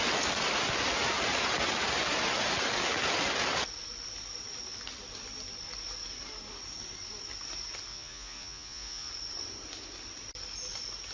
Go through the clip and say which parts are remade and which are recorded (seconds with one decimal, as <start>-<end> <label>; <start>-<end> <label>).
0.0-7.9 recorded; 7.9-9.1 remade; 9.1-11.1 recorded